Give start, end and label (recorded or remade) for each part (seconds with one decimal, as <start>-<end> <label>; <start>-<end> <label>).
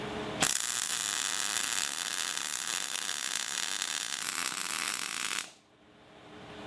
0.0-6.7 recorded